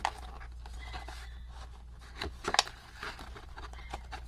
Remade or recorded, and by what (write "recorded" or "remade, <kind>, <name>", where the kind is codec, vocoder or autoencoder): recorded